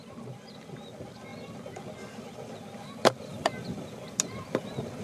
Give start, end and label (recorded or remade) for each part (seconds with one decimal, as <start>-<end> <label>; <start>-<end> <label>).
0.0-5.0 recorded